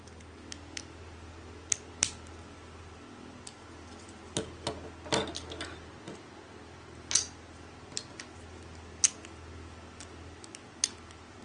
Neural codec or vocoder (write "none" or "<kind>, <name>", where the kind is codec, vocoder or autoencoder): none